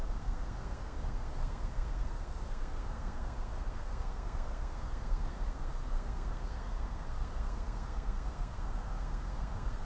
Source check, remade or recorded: remade